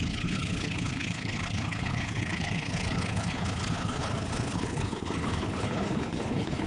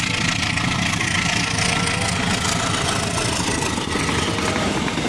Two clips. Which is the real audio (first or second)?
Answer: second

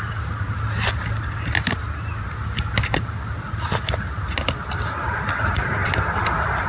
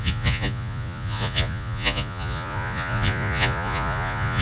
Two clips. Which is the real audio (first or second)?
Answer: first